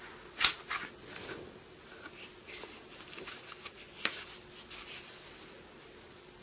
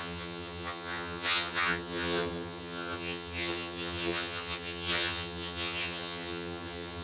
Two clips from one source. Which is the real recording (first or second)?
first